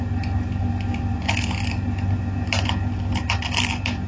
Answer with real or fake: real